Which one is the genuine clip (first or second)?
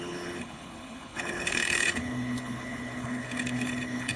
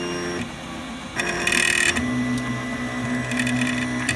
second